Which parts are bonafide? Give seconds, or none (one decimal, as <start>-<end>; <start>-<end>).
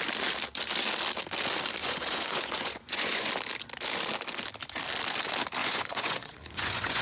0.0-1.8; 3.3-5.6